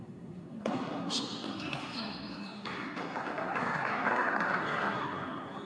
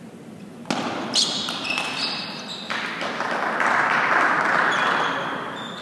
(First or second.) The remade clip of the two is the first